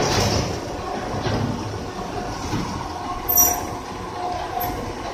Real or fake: real